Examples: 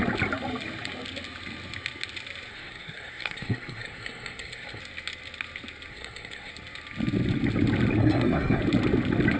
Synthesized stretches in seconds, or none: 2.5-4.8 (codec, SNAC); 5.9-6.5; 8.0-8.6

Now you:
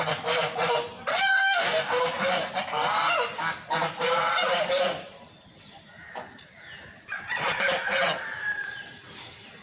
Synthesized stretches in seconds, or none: 1.1-2.0 (codec, DAC)

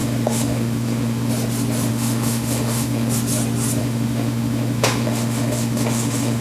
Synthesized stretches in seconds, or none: 0.0-1.3 (autoencoder, DAC-VAE); 1.9-3.1; 3.8-6.4